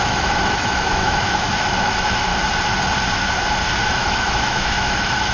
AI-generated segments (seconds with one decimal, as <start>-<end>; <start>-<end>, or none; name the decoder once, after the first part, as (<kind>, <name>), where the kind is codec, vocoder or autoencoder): 0.0-2.3 (autoencoder, DAC-VAE); 3.8-5.3